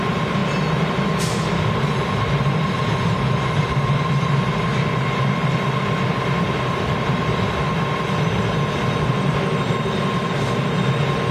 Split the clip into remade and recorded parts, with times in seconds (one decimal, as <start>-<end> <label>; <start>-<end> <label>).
0.0-11.3 recorded